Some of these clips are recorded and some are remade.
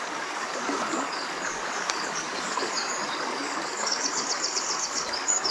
remade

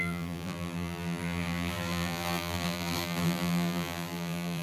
remade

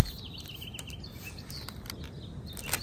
recorded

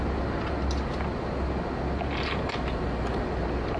recorded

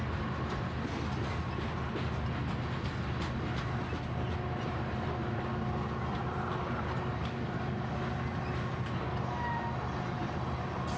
recorded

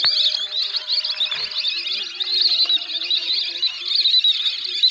recorded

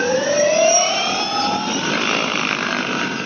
remade